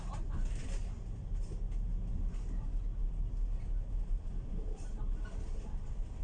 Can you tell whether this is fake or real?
real